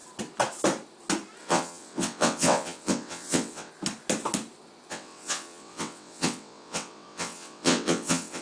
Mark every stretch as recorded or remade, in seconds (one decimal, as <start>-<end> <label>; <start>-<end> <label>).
0.0-1.4 recorded; 1.4-3.7 remade; 3.7-4.9 recorded; 4.9-8.4 remade